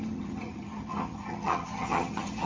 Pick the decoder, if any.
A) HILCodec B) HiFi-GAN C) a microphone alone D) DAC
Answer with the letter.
B